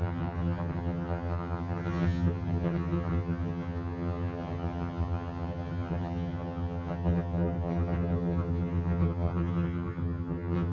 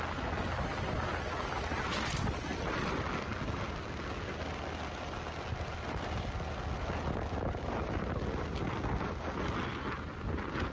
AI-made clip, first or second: first